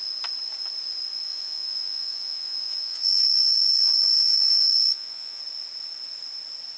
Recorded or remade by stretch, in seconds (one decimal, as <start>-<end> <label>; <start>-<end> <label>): 0.0-1.3 recorded; 1.3-5.4 remade; 5.4-6.8 recorded